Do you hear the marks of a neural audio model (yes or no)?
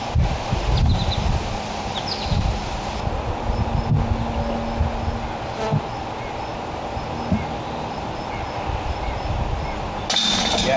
no